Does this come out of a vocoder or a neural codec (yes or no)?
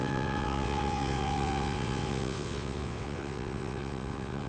yes